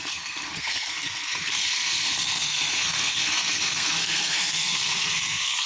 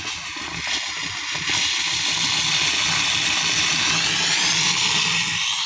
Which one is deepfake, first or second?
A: first